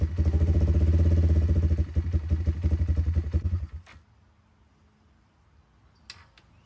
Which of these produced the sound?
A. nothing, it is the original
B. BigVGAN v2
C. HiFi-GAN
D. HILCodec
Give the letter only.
A